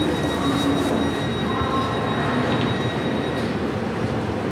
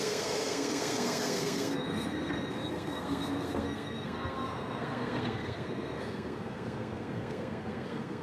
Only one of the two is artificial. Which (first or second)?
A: second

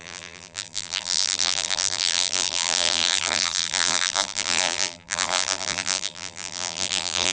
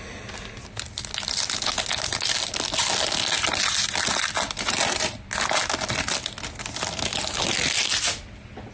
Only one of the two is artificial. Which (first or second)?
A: first